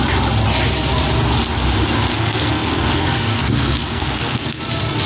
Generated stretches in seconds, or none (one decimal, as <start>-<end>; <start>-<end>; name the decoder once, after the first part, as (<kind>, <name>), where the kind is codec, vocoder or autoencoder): 2.1-4.6 (codec, SNAC)